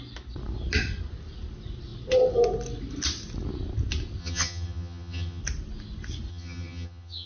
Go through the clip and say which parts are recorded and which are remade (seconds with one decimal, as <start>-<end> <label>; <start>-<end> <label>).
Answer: 0.0-4.2 recorded; 4.2-5.4 remade; 5.4-6.3 recorded; 6.3-7.3 remade